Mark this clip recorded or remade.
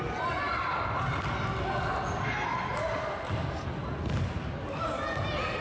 recorded